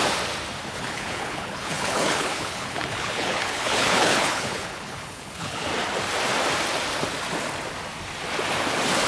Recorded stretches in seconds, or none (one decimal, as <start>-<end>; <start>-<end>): 0.0-0.7; 5.7-9.1